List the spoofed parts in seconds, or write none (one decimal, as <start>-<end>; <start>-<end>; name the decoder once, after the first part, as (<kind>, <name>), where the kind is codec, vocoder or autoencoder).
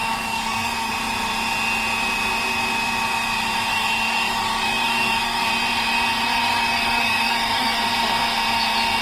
0.0-0.9 (codec, DAC); 3.7-5.5; 6.4-7.8